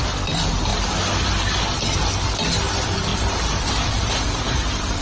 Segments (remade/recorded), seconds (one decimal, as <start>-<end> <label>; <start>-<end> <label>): 0.0-3.1 recorded; 3.1-5.0 remade